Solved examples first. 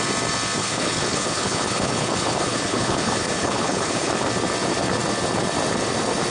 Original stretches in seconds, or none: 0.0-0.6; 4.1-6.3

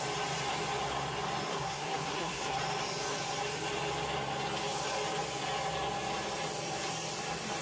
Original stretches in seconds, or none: 0.0-1.5; 2.6-7.6

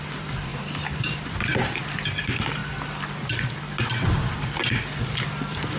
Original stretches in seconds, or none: 0.5-1.2; 2.6-5.0

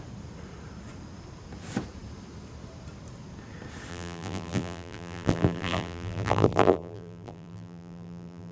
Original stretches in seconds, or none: 0.0-3.9

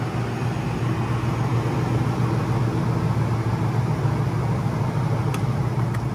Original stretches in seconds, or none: 0.0-6.1